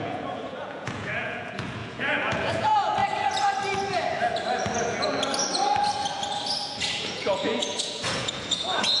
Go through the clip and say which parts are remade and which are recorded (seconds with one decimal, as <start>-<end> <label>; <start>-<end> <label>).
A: 0.0-3.0 remade; 3.0-7.0 recorded; 7.0-9.0 remade